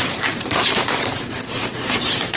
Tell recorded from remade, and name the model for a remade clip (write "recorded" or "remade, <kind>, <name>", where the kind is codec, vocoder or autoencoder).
remade, vocoder, BigVGAN v2